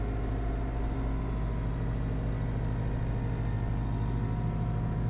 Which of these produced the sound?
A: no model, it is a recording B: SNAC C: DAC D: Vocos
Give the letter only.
A